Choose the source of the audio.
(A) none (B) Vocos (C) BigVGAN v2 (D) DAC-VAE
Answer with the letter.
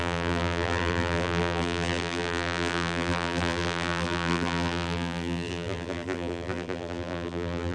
C